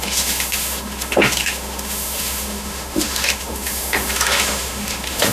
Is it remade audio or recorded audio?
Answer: remade